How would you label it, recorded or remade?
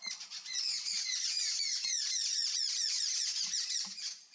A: remade